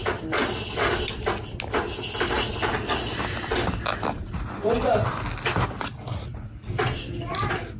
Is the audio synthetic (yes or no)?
no